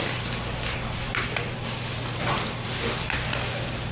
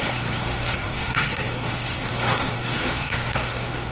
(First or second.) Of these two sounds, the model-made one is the second